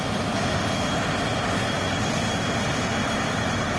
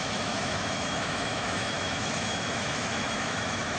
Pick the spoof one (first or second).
second